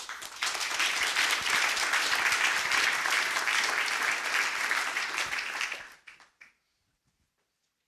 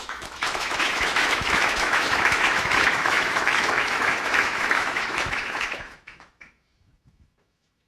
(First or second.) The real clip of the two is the first